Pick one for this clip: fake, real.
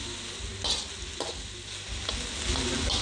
real